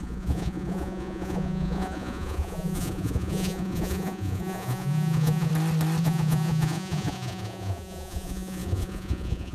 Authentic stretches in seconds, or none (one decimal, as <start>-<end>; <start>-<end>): 5.5-6.0